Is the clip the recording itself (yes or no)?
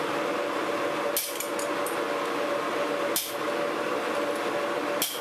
yes